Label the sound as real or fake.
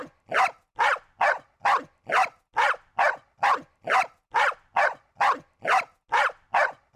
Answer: real